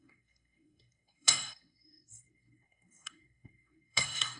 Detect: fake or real fake